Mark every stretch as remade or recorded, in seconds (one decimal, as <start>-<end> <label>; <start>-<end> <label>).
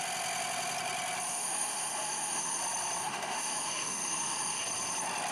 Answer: 0.0-1.3 recorded; 1.3-2.6 remade; 2.6-3.0 recorded; 3.0-4.6 remade; 4.6-5.3 recorded